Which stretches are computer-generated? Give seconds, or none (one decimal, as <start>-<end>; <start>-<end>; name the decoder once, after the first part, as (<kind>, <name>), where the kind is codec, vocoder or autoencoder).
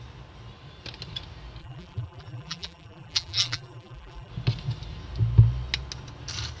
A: 1.6-4.3 (vocoder, BigVGAN v2)